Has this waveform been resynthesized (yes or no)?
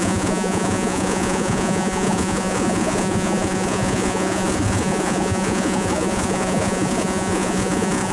yes